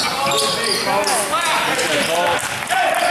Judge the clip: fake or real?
real